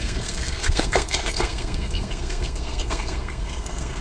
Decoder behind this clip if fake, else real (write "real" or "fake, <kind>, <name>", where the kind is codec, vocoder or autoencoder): fake, codec, SNAC